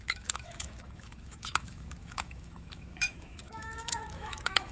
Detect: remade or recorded remade